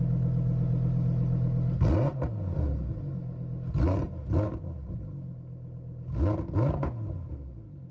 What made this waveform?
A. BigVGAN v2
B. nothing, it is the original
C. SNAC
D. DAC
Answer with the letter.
B